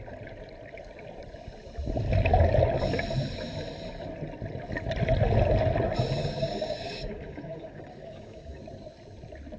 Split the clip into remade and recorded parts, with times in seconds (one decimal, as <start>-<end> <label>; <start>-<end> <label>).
0.0-6.2 recorded; 6.2-8.6 remade; 8.6-9.6 recorded